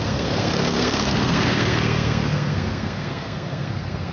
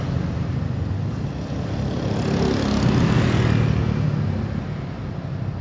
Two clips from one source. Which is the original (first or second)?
second